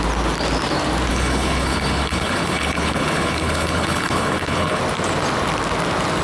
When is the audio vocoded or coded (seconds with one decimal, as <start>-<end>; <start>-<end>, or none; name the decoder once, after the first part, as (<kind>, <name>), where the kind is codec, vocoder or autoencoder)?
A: 1.1-4.8 (codec, HILCodec)